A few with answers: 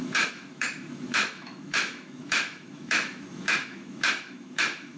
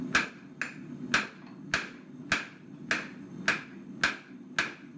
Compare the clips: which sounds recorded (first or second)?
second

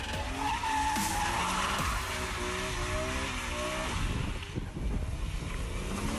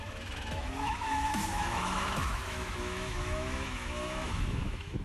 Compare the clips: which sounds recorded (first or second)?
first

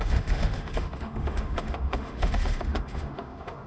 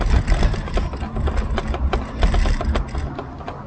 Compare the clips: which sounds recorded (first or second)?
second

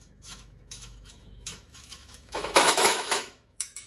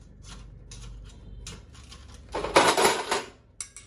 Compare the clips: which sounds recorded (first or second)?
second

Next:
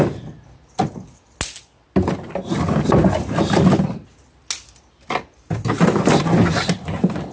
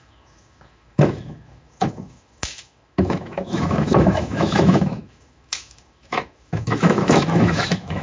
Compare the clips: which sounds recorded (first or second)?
first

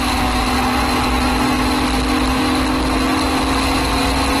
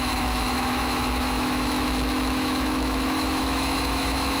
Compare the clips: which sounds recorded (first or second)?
first